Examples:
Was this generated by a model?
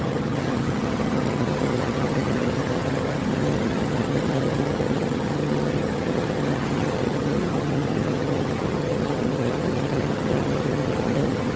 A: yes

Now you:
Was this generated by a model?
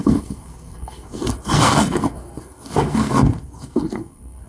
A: yes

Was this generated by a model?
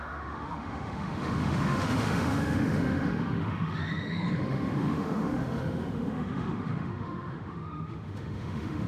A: yes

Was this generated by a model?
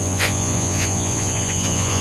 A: yes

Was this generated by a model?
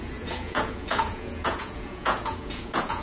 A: yes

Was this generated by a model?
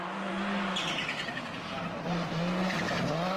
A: no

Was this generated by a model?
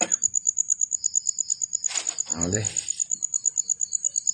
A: no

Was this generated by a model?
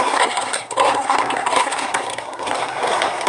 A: yes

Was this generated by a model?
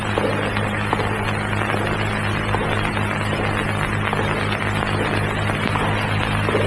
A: no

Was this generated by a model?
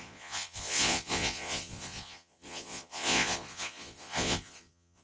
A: yes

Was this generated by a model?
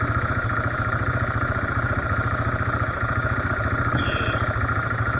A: yes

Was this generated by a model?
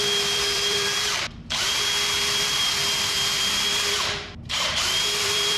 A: yes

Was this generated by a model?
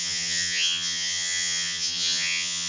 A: yes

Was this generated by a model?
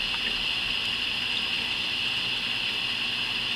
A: no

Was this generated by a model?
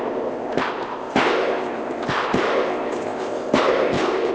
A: yes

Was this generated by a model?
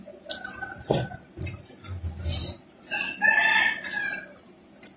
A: no